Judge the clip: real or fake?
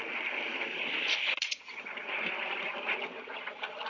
real